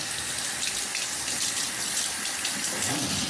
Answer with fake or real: real